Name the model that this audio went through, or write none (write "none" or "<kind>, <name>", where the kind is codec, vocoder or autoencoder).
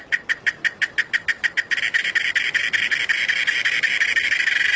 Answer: none